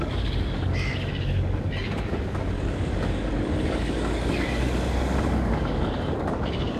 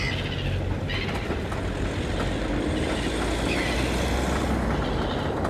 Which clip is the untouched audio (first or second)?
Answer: second